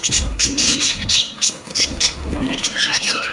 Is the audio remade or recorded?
remade